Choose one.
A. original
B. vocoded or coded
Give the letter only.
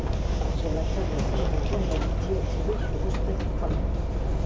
A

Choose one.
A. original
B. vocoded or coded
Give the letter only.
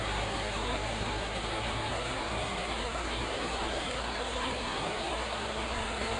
B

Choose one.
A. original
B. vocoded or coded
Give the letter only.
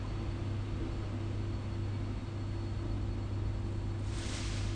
A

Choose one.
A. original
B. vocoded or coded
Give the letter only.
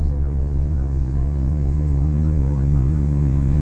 B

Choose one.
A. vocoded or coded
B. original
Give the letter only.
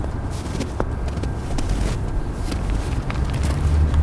B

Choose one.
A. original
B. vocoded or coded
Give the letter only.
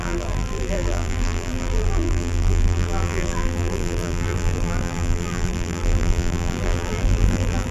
B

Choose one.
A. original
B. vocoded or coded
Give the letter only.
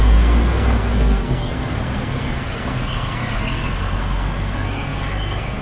B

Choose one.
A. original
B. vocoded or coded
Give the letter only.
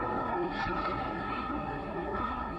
B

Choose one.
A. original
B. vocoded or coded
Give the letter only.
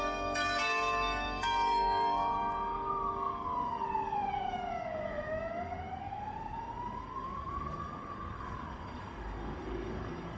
B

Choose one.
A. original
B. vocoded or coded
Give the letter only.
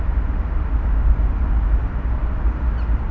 A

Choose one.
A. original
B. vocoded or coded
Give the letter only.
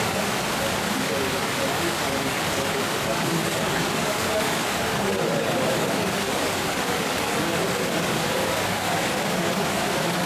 B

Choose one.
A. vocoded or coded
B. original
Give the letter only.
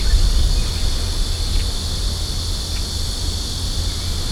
B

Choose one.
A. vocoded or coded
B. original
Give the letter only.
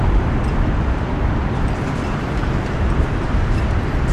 B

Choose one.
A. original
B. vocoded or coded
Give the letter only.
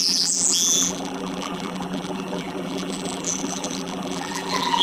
B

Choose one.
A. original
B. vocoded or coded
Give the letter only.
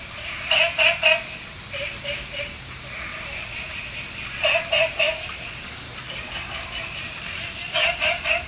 A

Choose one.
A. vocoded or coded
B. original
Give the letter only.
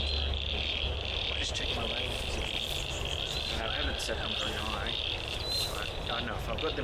B